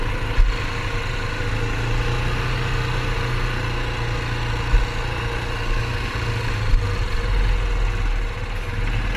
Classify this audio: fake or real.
real